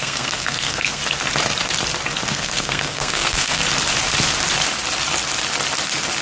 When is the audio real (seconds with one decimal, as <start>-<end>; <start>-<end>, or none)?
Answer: 1.0-2.3; 3.6-6.2